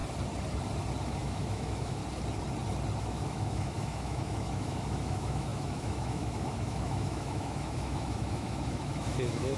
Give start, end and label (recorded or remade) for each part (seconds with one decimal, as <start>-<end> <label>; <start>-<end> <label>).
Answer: 0.0-1.0 recorded; 1.0-2.0 remade; 2.0-3.0 recorded; 3.0-9.6 remade

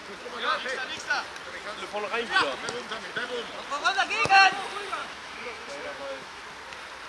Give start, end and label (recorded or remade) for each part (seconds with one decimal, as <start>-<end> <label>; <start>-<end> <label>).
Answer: 0.0-5.0 recorded; 5.0-6.4 remade; 6.4-7.1 recorded